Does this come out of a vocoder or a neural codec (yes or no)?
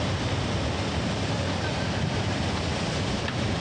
yes